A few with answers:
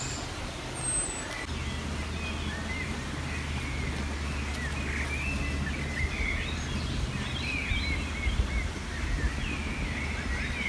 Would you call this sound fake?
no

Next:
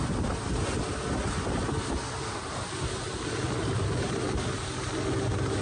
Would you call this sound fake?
no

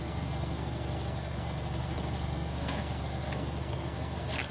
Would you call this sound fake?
yes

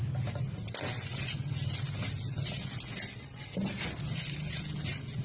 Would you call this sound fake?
no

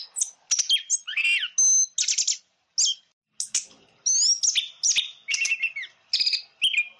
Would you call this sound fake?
no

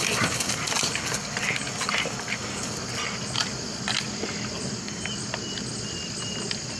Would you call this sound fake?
no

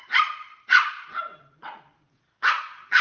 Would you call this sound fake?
yes